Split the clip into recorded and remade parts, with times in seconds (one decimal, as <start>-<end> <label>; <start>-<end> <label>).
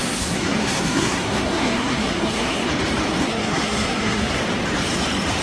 0.0-2.7 remade; 2.7-3.2 recorded; 3.2-4.4 remade; 4.4-5.4 recorded